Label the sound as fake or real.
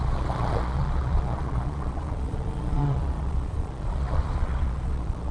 fake